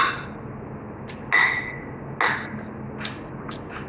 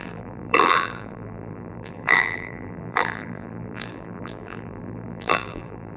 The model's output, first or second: second